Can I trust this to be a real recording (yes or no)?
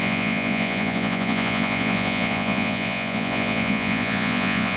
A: no